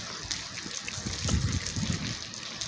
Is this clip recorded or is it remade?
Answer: recorded